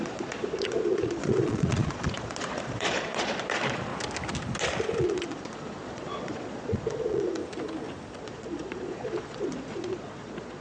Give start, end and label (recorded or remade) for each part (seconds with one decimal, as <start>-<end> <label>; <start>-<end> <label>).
0.0-3.9 remade; 3.9-5.0 recorded; 5.0-7.4 remade; 7.4-8.2 recorded; 8.2-10.6 remade